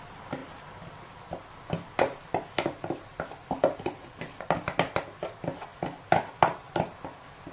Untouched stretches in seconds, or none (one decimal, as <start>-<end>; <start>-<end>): 0.0-7.5